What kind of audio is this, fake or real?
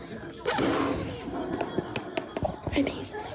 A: real